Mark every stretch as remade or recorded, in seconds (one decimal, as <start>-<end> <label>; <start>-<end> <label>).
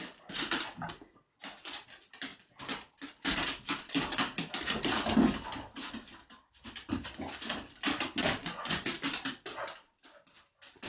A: 0.0-8.4 recorded; 8.4-8.9 remade; 8.9-10.9 recorded